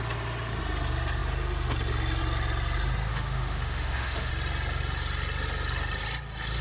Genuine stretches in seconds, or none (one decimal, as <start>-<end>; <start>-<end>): 0.0-3.1; 4.3-6.6